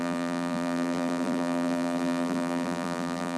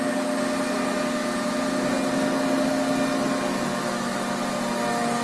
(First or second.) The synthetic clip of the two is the first